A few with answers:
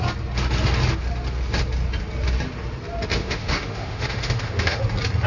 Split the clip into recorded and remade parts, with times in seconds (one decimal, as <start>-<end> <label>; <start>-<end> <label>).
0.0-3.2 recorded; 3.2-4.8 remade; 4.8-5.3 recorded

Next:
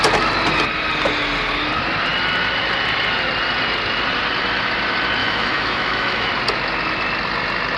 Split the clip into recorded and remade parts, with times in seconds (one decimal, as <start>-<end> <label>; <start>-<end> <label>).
0.0-5.2 recorded; 5.2-6.3 remade; 6.3-7.8 recorded

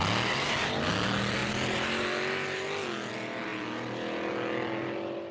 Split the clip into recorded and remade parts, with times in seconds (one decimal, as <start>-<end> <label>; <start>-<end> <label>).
0.0-5.3 recorded

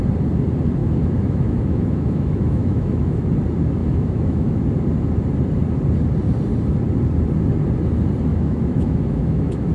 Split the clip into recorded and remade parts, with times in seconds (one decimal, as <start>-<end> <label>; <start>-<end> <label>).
0.0-0.8 recorded; 0.8-3.3 remade; 3.3-3.8 recorded; 3.8-4.6 remade; 4.6-8.3 recorded; 8.3-9.7 remade